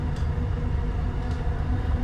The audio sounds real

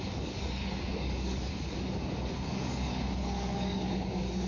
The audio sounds fake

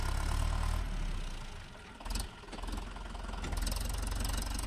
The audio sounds real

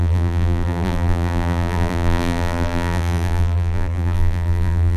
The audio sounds fake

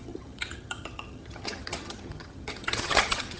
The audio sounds fake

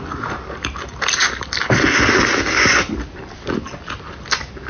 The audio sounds real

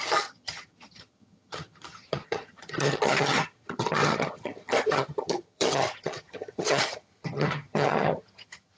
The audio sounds fake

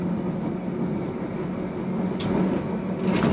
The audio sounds real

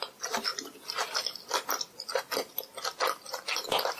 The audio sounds fake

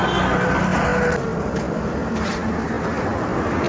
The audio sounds real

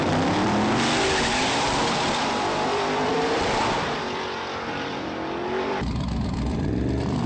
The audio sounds fake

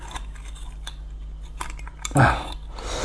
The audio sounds real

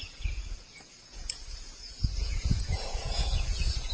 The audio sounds fake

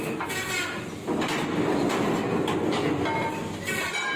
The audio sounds real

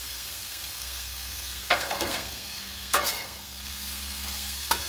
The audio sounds fake